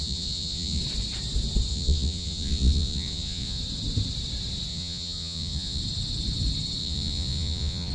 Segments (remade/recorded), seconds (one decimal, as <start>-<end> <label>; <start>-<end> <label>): 0.0-0.8 remade; 0.8-1.7 recorded; 1.7-3.6 remade; 3.6-4.7 recorded; 4.7-5.8 remade; 5.8-6.8 recorded; 6.8-7.9 remade